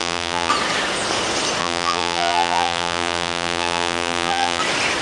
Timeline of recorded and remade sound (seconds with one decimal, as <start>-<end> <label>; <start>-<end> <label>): 0.0-0.5 remade; 0.5-1.6 recorded; 1.6-4.6 remade; 4.6-5.0 recorded